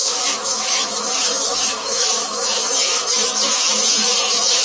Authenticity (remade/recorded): remade